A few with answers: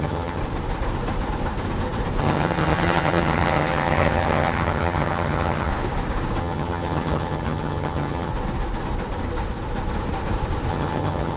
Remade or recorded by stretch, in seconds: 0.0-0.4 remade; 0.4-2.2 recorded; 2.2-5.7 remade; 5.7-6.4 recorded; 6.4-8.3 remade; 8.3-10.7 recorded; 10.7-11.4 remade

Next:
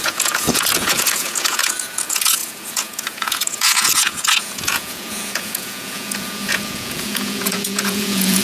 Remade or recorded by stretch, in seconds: 0.0-8.4 remade